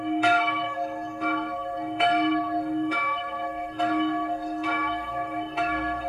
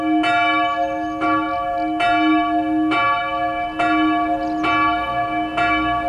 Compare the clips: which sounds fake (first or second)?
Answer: first